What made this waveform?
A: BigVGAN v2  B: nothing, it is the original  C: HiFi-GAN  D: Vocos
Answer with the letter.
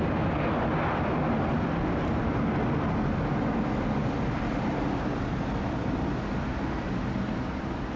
B